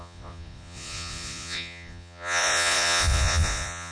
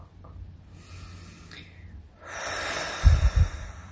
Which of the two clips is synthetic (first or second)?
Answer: first